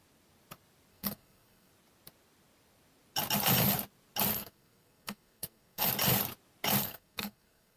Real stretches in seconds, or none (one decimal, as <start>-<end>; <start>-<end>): 0.0-0.9; 1.7-4.3; 5.9-6.8